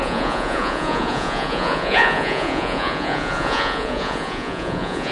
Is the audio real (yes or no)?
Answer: no